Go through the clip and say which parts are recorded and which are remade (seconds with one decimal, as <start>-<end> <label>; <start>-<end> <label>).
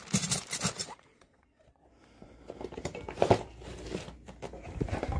0.0-0.8 recorded; 0.8-1.9 remade; 1.9-5.2 recorded